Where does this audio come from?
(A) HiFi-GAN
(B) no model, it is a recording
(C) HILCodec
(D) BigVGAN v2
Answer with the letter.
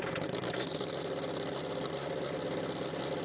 B